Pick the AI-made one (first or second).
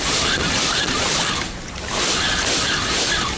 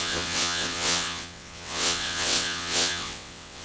second